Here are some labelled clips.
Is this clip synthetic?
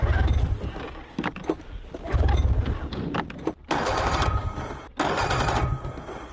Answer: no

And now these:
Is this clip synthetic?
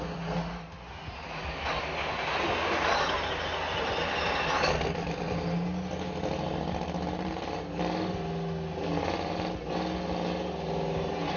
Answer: no